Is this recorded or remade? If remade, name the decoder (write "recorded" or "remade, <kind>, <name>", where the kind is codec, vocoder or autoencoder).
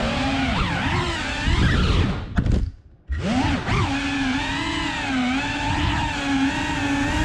recorded